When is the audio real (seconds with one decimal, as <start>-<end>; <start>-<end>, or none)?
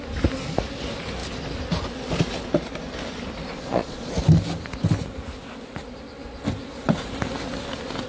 0.0-3.5; 4.1-8.1